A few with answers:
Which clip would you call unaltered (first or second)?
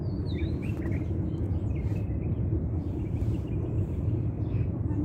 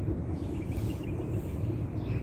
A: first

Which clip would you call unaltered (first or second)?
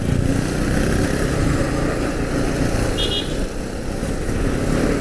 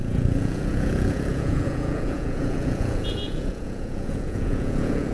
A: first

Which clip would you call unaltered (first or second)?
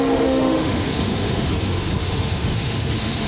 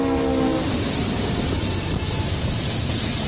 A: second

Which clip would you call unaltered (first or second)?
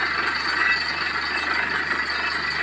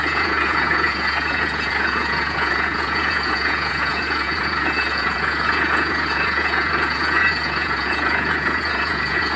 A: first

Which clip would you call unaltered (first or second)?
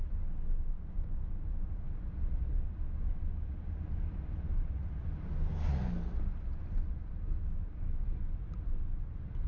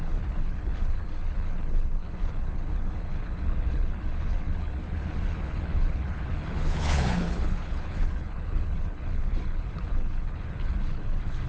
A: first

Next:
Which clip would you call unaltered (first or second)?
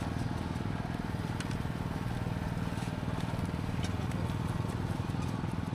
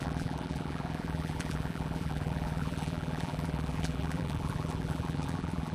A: first